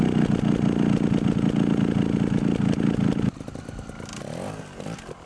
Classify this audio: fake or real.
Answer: real